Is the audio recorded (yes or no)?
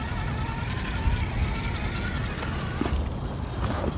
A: yes